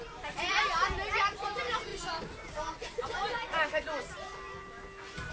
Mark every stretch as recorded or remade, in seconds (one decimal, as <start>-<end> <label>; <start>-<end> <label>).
0.0-5.3 recorded